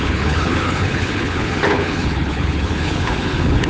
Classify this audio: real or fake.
fake